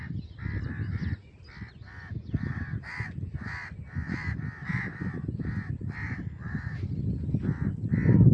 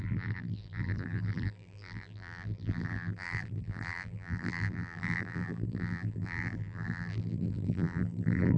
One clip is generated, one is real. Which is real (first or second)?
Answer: first